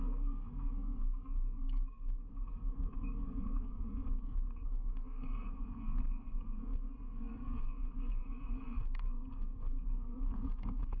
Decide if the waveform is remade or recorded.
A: remade